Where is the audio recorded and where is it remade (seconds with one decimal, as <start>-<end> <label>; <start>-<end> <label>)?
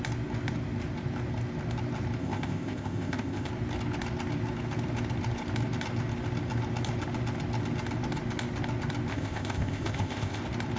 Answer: 0.0-2.2 recorded; 2.2-3.5 remade; 3.5-9.1 recorded; 9.1-10.4 remade; 10.4-10.8 recorded